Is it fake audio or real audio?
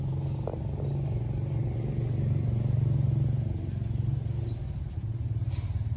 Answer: real